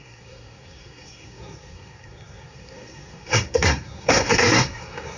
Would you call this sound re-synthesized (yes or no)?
yes